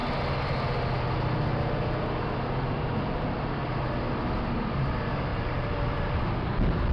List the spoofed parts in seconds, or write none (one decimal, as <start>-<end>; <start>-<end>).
5.3-6.1